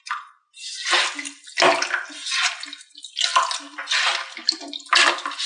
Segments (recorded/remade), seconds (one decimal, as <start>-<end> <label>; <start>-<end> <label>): 0.0-5.5 recorded